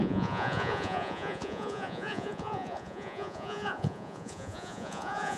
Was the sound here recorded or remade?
remade